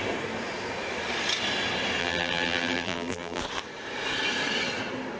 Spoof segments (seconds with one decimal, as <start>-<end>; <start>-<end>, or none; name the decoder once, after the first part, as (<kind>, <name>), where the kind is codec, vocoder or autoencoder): 2.0-3.4 (vocoder, BigVGAN v2)